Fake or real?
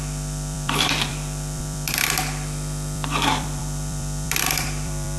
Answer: fake